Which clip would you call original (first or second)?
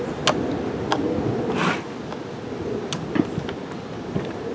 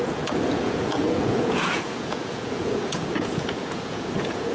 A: first